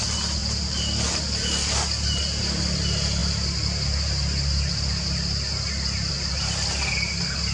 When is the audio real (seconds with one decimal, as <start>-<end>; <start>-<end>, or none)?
0.0-7.5